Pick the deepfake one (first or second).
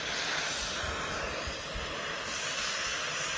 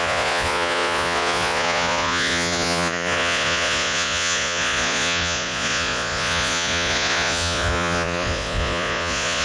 second